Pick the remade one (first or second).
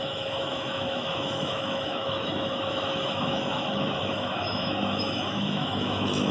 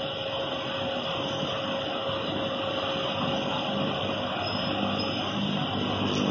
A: first